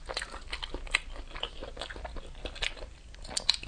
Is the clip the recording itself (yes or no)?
yes